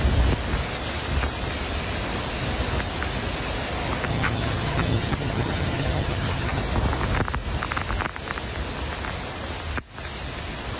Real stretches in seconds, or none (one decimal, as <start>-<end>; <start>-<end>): 0.0-4.1; 6.6-10.8